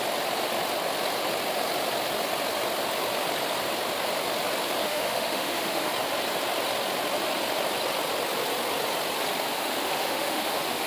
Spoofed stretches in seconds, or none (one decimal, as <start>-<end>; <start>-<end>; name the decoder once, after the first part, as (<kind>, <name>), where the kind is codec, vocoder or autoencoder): 4.8-5.9 (autoencoder, DAC-VAE); 9.5-10.9